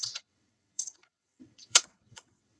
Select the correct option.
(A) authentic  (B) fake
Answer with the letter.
B